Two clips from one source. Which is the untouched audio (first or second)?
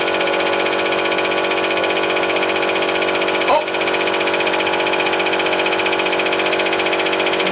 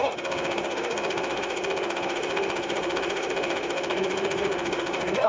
first